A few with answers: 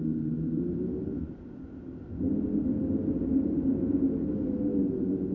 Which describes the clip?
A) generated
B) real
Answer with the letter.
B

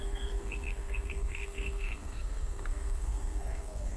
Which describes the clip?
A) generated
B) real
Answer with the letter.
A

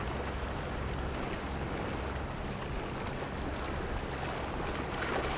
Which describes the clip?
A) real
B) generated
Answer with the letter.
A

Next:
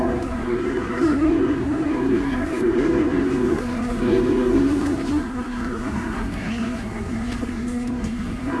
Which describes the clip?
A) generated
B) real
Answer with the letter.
A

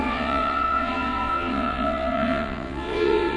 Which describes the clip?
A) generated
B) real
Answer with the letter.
A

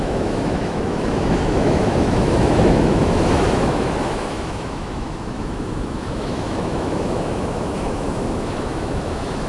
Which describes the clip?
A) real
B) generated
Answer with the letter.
B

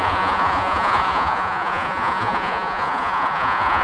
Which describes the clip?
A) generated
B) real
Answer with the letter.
A